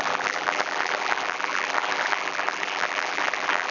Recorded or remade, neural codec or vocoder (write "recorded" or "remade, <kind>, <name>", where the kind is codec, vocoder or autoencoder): remade, vocoder, BigVGAN v2